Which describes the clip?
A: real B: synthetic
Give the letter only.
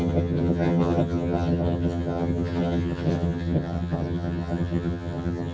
B